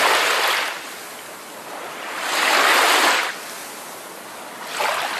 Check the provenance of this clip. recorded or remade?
recorded